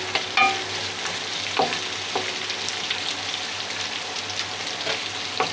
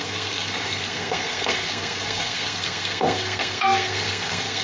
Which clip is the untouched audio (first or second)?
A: first